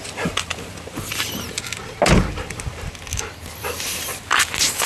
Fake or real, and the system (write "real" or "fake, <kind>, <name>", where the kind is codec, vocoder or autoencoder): real